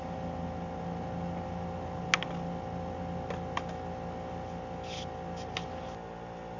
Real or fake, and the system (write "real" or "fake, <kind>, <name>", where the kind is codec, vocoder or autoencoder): real